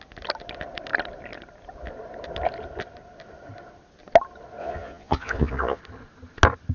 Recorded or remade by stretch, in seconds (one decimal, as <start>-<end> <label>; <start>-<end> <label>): 0.0-4.6 recorded; 4.6-5.8 remade; 5.8-6.7 recorded